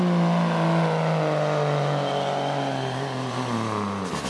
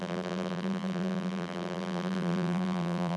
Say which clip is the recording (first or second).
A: first